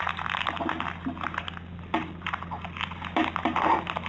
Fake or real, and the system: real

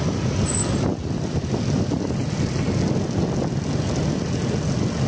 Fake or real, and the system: real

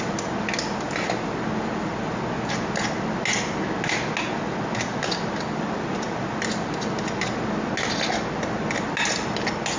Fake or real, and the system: real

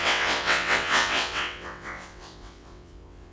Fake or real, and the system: fake, vocoder, WaveNeXt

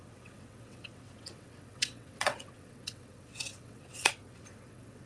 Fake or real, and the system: fake, vocoder, WaveNeXt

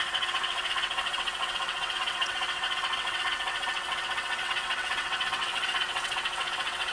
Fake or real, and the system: fake, vocoder, WaveNeXt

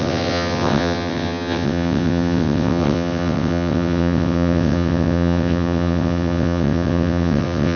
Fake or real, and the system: fake, vocoder, WaveNeXt